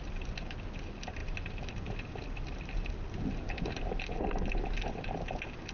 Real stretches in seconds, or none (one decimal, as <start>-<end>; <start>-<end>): 0.0-5.7